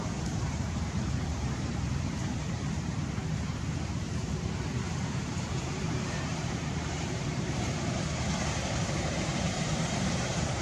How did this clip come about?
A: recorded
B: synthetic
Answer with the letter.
B